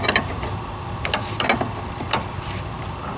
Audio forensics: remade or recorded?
recorded